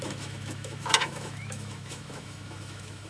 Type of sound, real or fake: fake